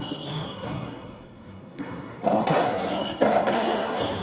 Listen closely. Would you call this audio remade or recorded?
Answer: remade